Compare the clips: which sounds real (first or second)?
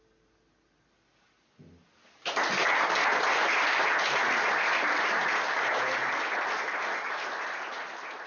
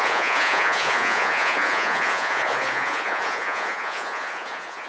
first